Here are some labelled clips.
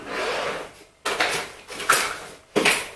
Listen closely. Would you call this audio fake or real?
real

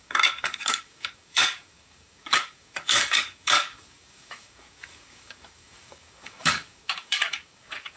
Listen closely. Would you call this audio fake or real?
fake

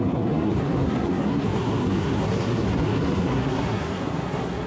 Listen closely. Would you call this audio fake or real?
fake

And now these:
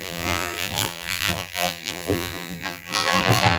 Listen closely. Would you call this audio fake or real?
fake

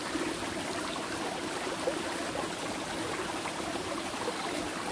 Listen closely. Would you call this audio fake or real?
real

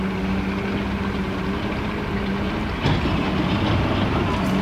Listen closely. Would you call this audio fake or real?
real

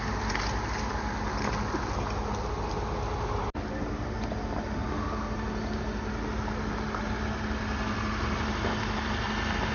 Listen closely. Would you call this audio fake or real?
real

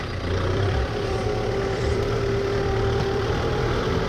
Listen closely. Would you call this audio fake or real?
fake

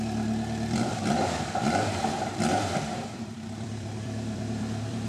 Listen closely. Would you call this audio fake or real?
fake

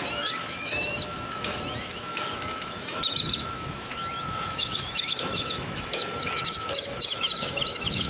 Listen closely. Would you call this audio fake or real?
fake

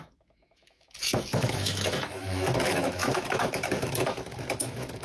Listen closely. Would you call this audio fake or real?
fake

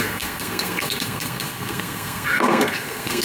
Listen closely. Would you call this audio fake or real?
fake